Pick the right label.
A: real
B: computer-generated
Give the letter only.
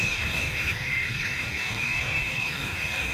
B